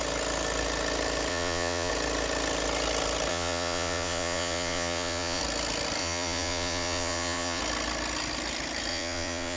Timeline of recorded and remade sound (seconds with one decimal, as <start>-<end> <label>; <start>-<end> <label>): 0.0-1.3 recorded; 1.3-1.9 remade; 1.9-3.3 recorded; 3.3-5.4 remade; 5.4-6.0 recorded; 6.0-7.6 remade; 7.6-8.9 recorded; 8.9-9.6 remade